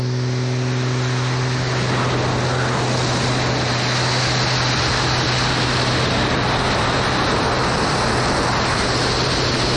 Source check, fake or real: real